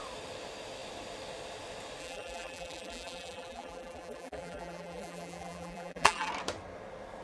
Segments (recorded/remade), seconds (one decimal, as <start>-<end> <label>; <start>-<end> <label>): 0.0-2.0 recorded; 2.0-6.3 remade; 6.3-7.2 recorded